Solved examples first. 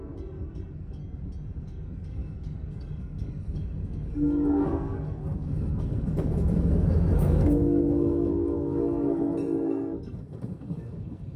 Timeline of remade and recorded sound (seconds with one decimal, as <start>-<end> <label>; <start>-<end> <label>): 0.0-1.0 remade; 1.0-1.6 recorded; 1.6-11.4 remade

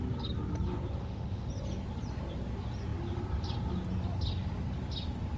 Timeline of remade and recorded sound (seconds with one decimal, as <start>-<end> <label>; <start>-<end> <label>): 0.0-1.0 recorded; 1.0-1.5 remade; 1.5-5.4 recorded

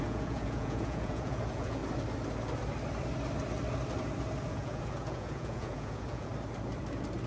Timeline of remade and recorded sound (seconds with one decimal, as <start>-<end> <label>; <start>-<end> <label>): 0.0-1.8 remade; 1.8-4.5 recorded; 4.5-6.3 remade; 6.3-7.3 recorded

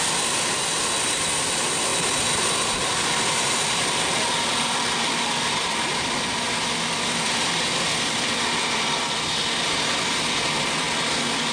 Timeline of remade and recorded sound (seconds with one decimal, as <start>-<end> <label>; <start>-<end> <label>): 0.0-11.5 recorded

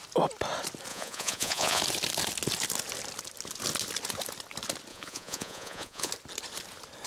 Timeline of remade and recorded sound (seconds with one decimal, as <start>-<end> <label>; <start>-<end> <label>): 0.0-0.9 recorded; 0.9-1.8 remade; 1.8-4.9 recorded; 4.9-6.1 remade; 6.1-7.1 recorded

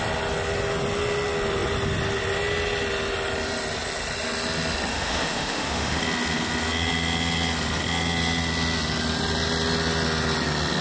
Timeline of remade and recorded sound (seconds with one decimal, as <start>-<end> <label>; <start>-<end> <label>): 0.0-4.9 recorded; 4.9-6.0 remade; 6.0-10.8 recorded

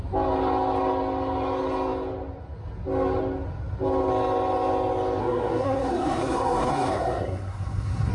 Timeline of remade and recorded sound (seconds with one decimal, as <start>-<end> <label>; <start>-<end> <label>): 0.0-5.2 recorded; 5.2-8.1 remade